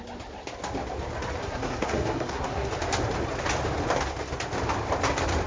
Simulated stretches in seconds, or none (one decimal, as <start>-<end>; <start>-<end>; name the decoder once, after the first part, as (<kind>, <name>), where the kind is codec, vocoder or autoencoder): 1.4-2.7 (codec, SNAC)